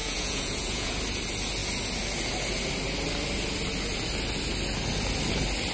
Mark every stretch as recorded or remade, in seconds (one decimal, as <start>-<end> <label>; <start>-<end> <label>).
0.0-0.9 remade; 0.9-5.7 recorded